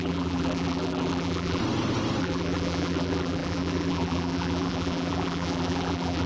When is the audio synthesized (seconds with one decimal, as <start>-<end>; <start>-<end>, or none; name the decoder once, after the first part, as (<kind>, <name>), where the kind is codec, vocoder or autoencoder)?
0.0-1.6 (vocoder, BigVGAN v2); 2.2-6.3